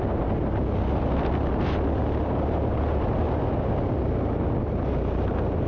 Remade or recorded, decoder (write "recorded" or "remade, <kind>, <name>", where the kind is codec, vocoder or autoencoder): recorded